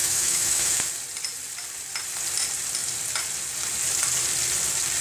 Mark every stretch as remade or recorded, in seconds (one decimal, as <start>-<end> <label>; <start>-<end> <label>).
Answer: 0.0-0.8 remade; 0.8-5.0 recorded